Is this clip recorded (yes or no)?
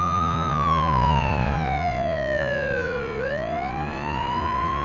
no